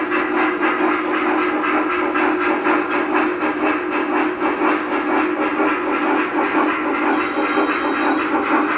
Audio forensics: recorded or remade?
recorded